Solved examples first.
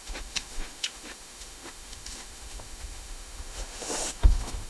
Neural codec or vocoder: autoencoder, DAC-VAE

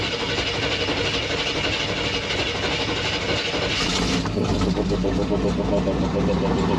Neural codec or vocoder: none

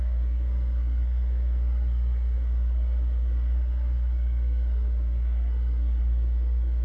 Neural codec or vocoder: codec, SNAC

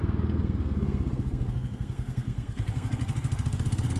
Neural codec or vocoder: codec, SNAC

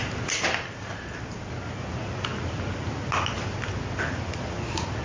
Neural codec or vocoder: none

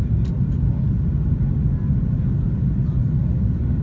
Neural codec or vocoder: none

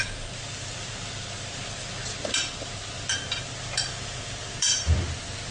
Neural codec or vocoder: none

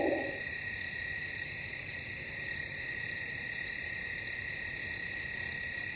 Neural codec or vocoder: vocoder, BigVGAN v2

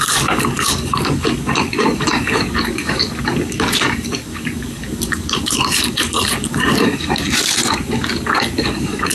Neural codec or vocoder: codec, DAC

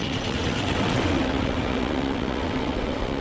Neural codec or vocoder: vocoder, WaveNeXt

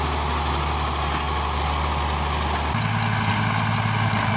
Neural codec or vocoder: none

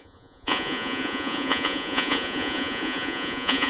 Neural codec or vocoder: vocoder, Vocos